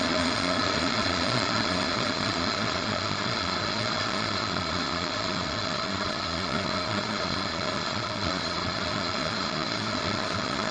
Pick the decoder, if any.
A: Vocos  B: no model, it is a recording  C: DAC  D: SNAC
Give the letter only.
A